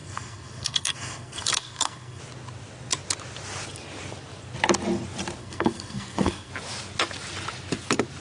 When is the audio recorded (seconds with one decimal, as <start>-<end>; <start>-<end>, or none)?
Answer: 2.2-5.4; 6.5-8.2